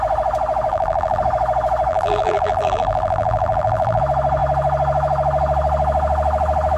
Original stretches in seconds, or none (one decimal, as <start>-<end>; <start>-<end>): 0.0-0.7; 1.2-1.9; 4.0-6.8